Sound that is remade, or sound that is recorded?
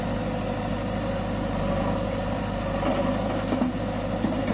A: recorded